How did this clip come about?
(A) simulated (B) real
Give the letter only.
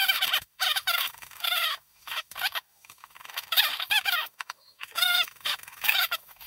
A